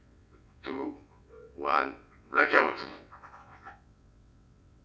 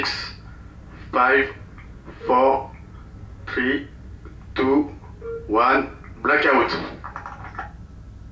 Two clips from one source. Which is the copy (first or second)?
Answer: first